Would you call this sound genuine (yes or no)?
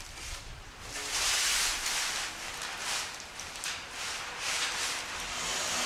yes